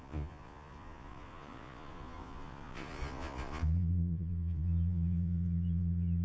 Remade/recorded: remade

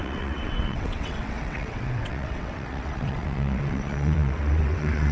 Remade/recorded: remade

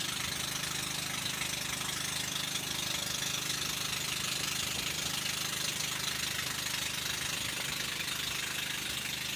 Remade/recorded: recorded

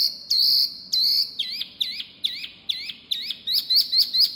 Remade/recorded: recorded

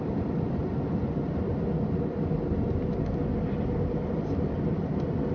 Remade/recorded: recorded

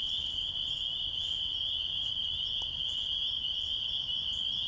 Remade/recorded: recorded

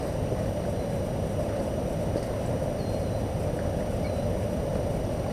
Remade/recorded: recorded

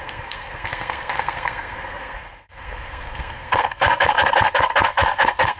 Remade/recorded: remade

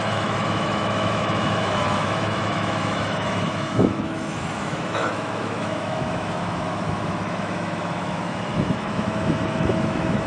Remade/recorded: remade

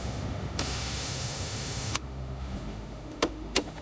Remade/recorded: remade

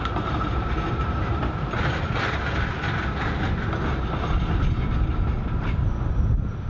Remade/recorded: recorded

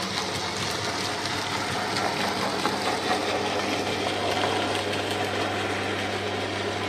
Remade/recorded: recorded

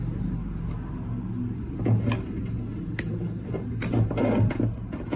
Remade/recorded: recorded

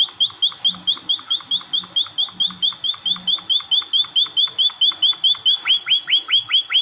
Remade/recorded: recorded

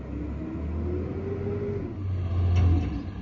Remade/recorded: recorded